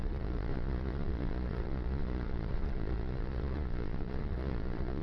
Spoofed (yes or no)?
yes